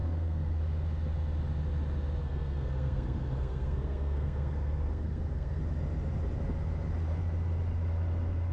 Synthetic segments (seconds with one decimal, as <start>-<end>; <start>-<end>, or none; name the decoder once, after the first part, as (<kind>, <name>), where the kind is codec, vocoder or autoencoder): 0.0-0.6 (codec, SNAC); 2.2-5.6